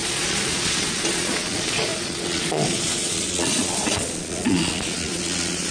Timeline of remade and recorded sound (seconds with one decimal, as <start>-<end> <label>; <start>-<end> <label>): 0.0-5.7 remade